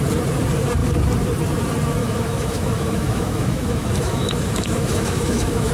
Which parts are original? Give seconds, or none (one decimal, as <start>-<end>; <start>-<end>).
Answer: 0.0-2.0